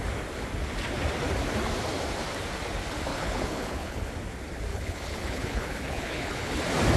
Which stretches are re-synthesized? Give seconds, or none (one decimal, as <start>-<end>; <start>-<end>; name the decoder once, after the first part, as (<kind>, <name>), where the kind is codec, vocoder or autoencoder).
3.1-4.1 (codec, HILCodec); 4.7-6.6